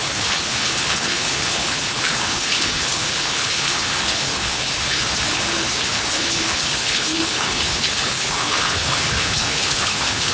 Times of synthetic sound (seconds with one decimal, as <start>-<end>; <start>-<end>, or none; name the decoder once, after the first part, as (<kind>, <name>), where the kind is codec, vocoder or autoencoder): 0.0-10.3 (codec, HILCodec)